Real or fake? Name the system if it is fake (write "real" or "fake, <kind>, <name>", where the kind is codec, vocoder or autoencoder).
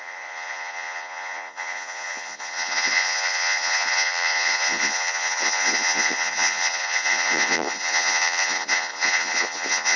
fake, vocoder, Vocos